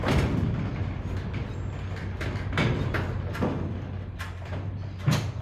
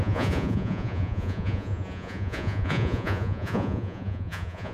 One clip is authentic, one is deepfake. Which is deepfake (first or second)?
second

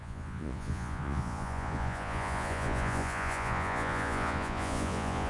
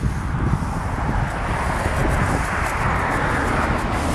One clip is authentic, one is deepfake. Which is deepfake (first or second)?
first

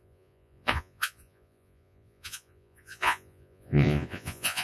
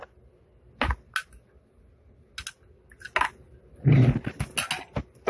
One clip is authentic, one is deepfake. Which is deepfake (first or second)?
first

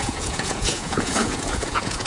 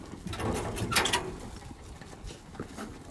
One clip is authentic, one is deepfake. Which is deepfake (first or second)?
first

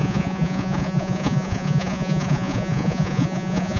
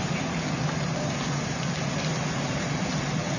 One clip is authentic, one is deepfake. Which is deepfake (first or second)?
first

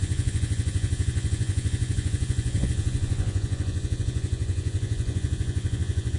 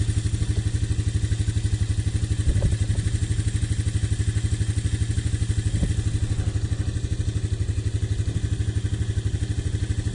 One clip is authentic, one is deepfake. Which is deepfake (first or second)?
first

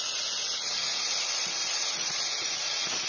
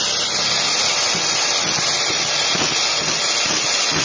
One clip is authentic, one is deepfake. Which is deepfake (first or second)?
first